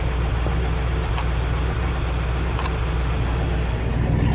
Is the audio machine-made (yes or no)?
no